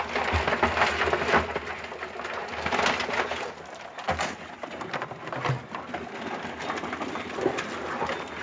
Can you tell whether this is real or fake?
real